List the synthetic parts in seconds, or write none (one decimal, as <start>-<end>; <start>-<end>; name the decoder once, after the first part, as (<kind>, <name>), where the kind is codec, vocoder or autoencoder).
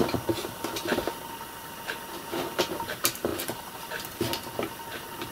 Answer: none